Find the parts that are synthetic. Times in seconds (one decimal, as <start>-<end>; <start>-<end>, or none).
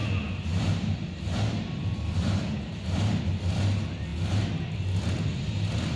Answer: none